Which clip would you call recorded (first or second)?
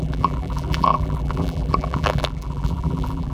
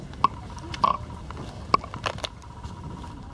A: second